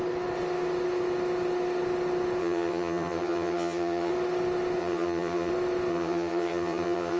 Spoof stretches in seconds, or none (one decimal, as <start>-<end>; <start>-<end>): 2.4-4.1; 4.8-5.5; 5.9-7.2